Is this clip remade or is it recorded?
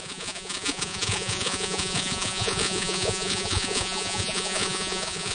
remade